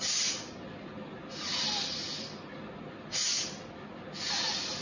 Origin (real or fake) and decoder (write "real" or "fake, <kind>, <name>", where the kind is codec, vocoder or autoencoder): real